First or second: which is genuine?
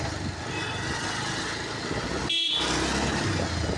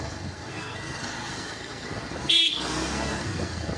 first